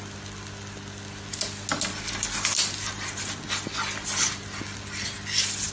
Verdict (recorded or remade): recorded